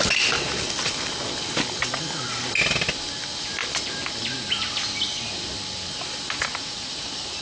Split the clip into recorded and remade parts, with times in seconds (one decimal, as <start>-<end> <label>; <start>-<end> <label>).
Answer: 0.0-6.6 recorded; 6.6-7.4 remade